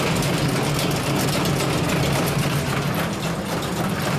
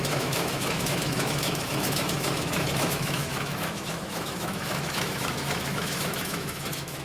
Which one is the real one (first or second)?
first